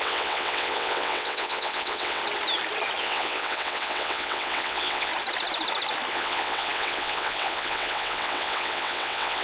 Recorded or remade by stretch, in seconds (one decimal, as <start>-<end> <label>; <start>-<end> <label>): 0.0-2.2 remade; 2.2-3.0 recorded; 3.0-5.1 remade; 5.1-6.1 recorded; 6.1-9.4 remade